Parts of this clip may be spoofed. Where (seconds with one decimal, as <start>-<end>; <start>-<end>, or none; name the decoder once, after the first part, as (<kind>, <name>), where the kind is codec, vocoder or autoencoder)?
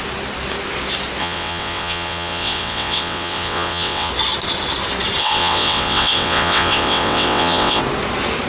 1.2-4.1 (vocoder, WaveNeXt); 5.2-7.8